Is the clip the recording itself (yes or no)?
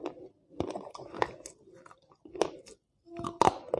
yes